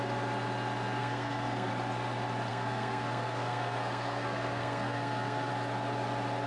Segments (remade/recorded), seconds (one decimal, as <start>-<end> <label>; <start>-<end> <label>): 0.0-1.0 recorded; 1.0-1.7 remade; 1.7-2.5 recorded; 2.5-5.5 remade; 5.5-6.5 recorded